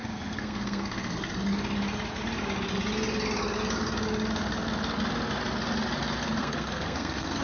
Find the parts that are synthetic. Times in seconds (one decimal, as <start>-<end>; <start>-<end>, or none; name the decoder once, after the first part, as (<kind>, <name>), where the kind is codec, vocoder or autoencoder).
0.0-1.3 (codec, SNAC); 6.4-7.4